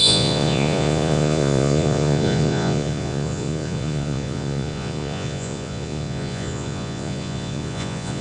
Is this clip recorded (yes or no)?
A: no